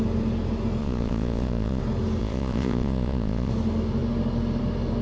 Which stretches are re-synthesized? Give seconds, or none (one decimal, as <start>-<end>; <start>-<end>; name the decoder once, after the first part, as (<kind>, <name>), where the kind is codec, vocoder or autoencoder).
0.8-1.8 (vocoder, Vocos); 2.2-3.5